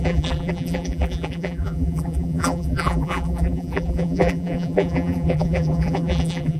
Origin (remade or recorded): remade